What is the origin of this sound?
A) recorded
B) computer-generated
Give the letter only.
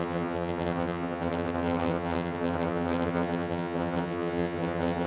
B